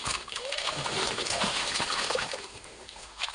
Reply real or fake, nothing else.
fake